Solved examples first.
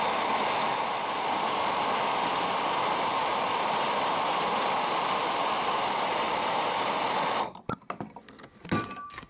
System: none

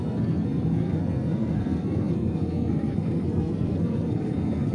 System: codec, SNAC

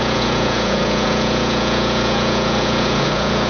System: vocoder, Vocos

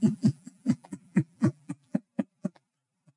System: vocoder, BigVGAN v2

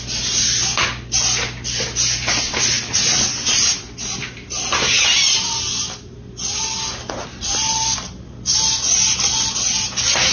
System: none